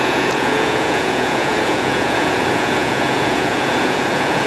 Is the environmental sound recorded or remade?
remade